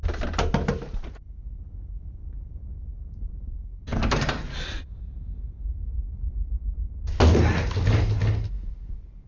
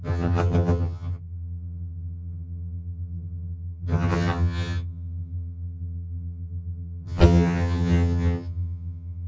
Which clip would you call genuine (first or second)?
first